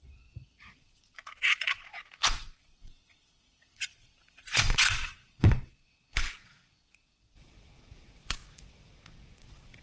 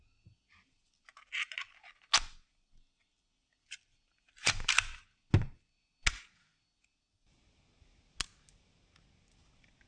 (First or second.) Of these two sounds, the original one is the second